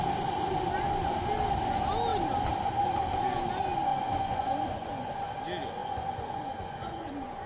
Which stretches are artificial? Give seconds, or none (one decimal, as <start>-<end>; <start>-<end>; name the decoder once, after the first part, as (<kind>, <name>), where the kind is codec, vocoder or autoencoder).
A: 3.9-5.1 (vocoder, Vocos); 5.8-7.5